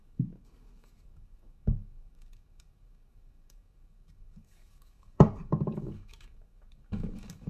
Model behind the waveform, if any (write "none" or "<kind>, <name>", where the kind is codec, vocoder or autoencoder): codec, DAC